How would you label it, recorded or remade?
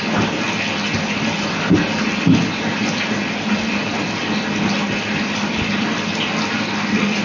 recorded